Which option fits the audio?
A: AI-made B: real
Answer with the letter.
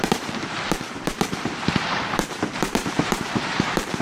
A